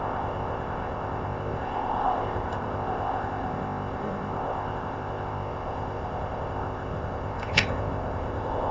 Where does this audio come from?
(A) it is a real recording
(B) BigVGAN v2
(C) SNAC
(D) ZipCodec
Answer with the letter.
D